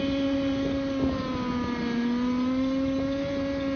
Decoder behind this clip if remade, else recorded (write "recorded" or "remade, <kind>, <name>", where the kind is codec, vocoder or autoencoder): recorded